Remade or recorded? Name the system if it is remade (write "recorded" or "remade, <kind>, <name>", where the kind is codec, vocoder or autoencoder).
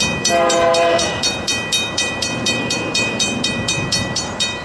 remade, vocoder, BigVGAN v2